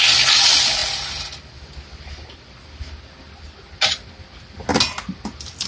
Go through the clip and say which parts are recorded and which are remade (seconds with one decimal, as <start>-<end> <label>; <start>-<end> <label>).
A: 0.0-5.7 recorded